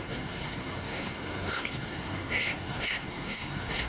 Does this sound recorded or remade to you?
remade